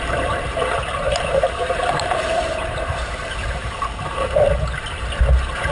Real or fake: fake